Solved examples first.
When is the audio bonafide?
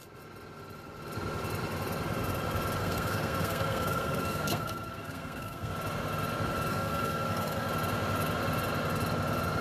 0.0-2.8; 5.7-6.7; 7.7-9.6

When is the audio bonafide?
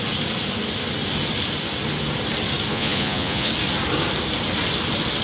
0.0-2.7; 3.5-5.2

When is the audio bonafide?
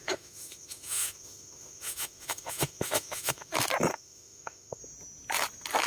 3.5-3.9; 4.8-5.9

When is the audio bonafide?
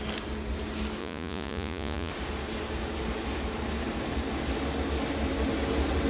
0.0-1.0; 2.1-6.1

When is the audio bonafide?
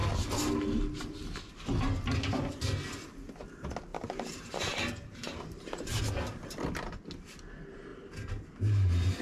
0.0-3.9; 6.0-9.2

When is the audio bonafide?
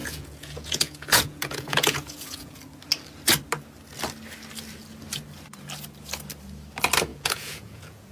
2.6-7.1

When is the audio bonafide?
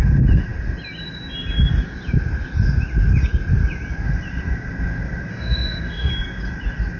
0.0-5.3; 6.1-7.0